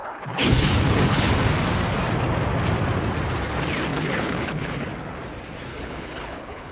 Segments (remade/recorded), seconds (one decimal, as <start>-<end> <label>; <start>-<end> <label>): 0.0-1.3 remade; 1.3-3.9 recorded; 3.9-4.9 remade; 4.9-5.7 recorded; 5.7-6.7 remade